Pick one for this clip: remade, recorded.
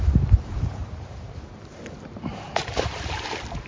remade